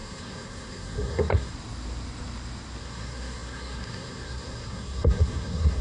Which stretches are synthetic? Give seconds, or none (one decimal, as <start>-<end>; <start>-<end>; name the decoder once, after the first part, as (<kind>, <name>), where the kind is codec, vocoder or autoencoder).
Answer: 0.0-1.5 (codec, SNAC); 2.8-5.8